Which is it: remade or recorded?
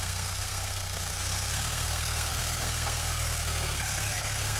remade